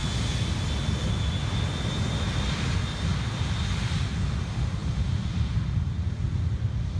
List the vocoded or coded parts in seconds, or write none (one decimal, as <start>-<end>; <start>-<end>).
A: 4.8-5.5